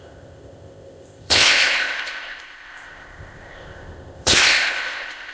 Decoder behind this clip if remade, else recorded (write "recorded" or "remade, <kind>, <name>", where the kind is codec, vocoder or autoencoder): remade, codec, ZipCodec